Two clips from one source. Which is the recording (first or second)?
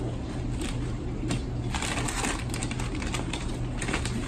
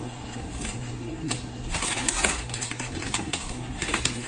first